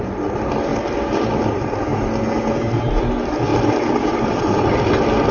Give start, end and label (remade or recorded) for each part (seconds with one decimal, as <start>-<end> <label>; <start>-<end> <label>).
0.0-0.7 remade; 0.7-1.4 recorded; 1.4-1.9 remade; 1.9-3.0 recorded; 3.0-5.3 remade